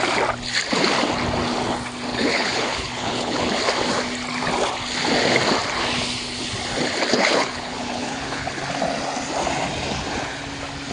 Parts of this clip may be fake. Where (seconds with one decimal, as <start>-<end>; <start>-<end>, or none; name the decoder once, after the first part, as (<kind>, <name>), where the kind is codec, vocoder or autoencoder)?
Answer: 2.1-3.5 (codec, HILCodec); 7.1-8.5